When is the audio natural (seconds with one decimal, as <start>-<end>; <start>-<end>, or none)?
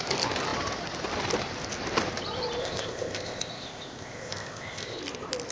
0.0-2.6; 5.0-5.5